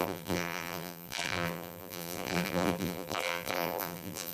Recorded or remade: remade